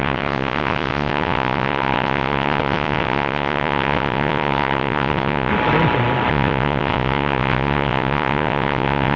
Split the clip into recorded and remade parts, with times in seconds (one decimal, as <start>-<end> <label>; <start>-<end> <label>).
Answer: 0.0-5.5 remade; 5.5-6.3 recorded; 6.3-9.2 remade